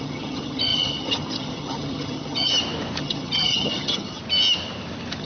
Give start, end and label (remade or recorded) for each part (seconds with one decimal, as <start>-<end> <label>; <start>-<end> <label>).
0.0-2.5 remade; 2.5-3.0 recorded; 3.0-4.2 remade; 4.2-5.2 recorded